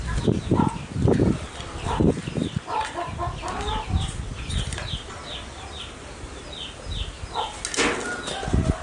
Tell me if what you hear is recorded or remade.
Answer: recorded